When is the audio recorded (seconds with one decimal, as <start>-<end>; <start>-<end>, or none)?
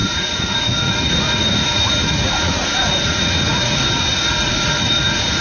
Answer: none